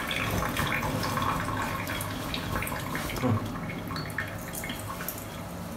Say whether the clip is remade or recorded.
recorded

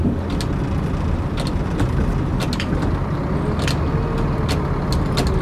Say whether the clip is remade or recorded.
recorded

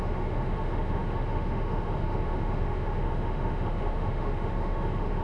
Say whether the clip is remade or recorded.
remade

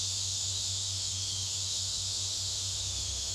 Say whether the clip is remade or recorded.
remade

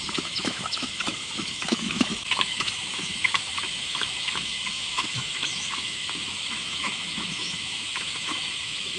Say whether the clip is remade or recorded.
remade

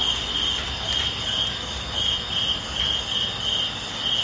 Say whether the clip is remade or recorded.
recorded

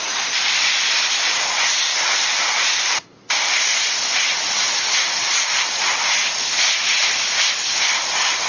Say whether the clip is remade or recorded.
recorded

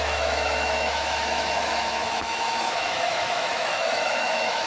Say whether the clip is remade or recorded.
remade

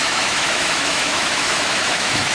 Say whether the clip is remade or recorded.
remade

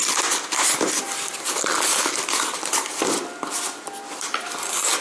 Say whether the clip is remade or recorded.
recorded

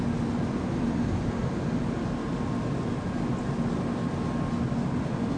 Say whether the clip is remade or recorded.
recorded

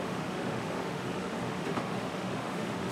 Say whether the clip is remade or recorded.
remade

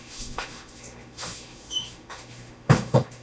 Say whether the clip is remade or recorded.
remade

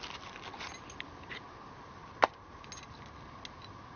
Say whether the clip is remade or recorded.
recorded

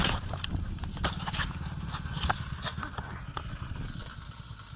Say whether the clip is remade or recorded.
recorded